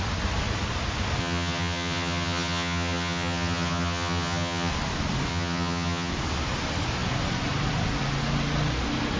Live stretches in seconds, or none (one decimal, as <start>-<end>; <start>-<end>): 0.0-1.2; 4.7-5.3; 6.1-9.2